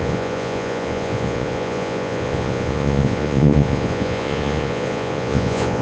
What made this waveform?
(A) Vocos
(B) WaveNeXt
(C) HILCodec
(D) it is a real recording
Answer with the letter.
A